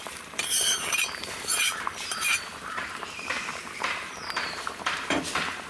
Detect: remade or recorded remade